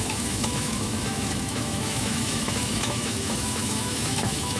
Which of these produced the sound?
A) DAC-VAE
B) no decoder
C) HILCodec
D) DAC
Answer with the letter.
A